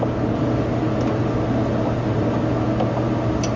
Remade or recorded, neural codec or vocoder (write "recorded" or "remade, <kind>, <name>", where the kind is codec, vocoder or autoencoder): recorded